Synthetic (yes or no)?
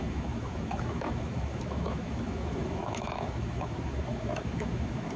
yes